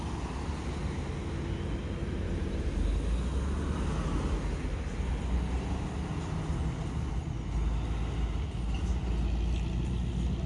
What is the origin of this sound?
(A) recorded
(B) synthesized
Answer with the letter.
A